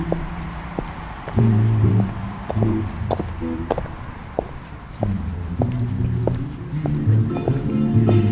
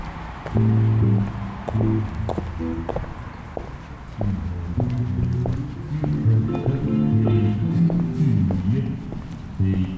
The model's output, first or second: first